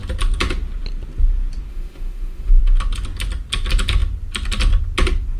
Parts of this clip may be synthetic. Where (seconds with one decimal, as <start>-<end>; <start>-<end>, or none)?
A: 1.7-2.6